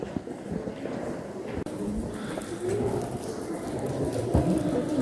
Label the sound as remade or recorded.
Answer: recorded